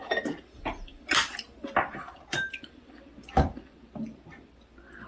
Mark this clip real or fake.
real